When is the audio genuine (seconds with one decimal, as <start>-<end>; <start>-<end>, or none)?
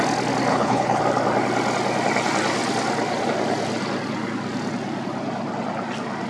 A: 0.0-0.5; 1.0-6.3